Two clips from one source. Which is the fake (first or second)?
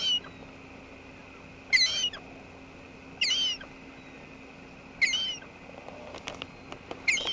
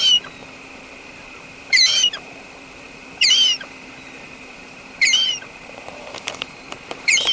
second